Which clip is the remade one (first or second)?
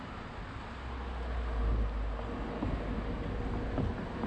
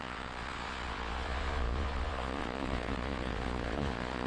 second